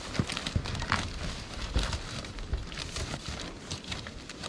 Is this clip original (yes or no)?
yes